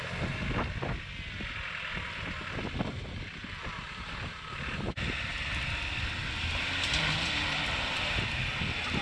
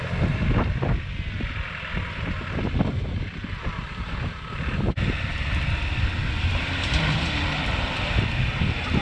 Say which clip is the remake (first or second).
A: second